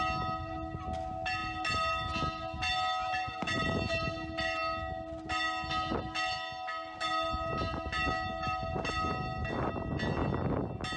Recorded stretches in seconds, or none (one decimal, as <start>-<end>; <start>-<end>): 0.0-11.0